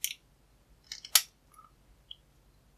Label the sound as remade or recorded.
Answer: recorded